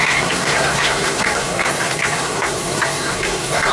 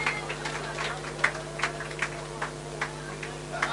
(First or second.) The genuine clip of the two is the second